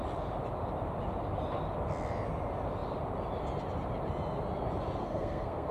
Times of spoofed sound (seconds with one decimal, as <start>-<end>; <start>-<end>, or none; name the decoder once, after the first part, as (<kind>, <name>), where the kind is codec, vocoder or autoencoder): 5.0-5.7 (codec, SNAC)